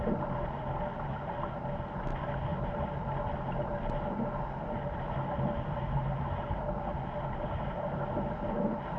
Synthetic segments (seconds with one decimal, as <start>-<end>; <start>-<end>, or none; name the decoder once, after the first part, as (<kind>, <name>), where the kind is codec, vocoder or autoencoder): none